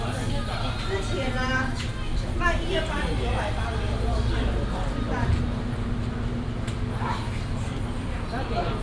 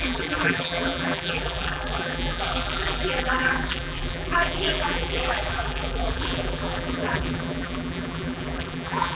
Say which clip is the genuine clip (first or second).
first